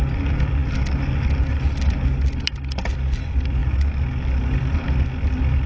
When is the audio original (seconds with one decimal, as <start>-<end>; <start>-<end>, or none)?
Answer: 0.0-5.7